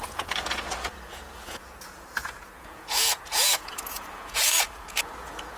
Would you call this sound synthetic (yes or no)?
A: yes